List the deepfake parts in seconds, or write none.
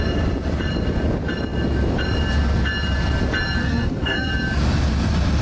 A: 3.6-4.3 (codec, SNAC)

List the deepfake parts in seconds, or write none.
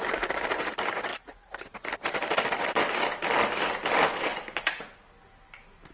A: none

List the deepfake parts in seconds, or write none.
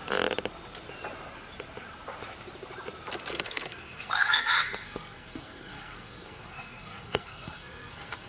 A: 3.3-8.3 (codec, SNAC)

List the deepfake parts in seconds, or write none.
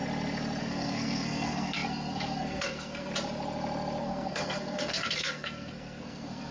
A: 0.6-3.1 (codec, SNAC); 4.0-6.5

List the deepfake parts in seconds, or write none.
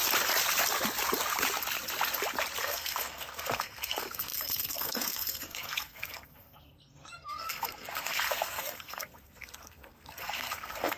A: 2.6-11.0 (codec, SNAC)